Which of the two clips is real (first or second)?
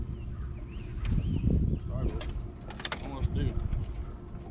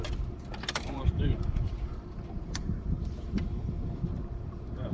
first